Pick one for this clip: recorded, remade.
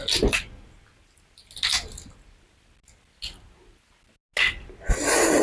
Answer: recorded